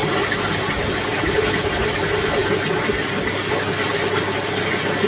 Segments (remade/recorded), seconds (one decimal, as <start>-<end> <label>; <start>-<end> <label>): 0.0-5.1 recorded